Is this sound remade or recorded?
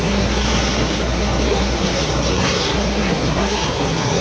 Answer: remade